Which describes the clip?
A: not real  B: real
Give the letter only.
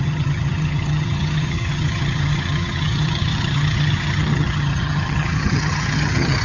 A